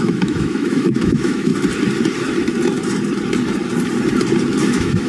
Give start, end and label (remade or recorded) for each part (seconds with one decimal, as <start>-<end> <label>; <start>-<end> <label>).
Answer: 0.0-1.5 remade; 1.5-4.6 recorded; 4.6-5.1 remade

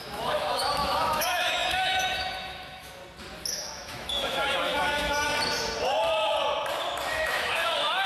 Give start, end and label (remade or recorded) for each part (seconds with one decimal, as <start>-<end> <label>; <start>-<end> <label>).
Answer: 0.0-3.0 remade; 3.0-3.5 recorded; 3.5-5.3 remade; 5.3-7.1 recorded; 7.1-8.1 remade